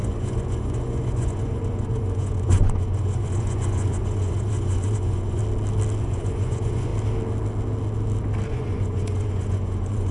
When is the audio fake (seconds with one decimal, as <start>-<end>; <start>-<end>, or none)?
0.0-5.4; 6.0-6.9; 8.5-10.1

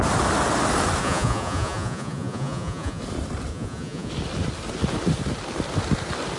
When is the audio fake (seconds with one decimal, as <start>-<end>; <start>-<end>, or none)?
1.0-3.0; 3.5-4.1